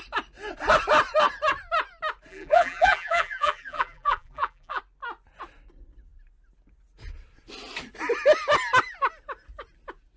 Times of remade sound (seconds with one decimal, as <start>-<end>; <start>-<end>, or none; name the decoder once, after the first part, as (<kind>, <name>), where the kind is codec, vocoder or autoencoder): 2.3-4.8 (vocoder, BigVGAN v2)